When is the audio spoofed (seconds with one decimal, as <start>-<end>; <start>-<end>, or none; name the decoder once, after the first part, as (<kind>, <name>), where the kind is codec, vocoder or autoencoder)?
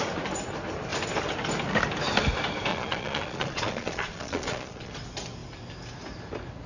2.7-4.9 (vocoder, Vocos)